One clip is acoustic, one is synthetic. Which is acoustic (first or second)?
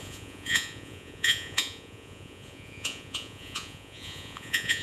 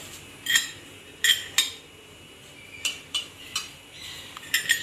second